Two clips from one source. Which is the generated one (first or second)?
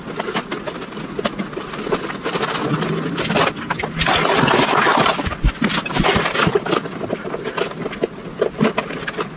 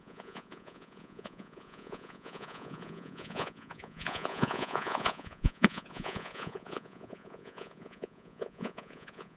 second